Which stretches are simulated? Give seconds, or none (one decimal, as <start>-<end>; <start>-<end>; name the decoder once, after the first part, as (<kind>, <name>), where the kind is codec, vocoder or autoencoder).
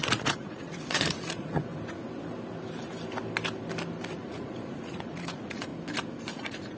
0.0-1.7 (vocoder, Vocos); 4.1-5.7; 6.2-6.8